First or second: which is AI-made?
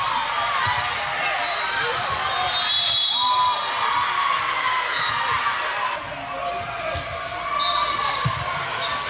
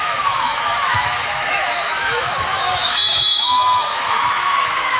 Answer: second